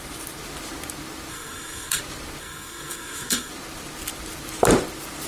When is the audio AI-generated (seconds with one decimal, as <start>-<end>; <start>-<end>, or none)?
1.3-2.0; 2.4-3.5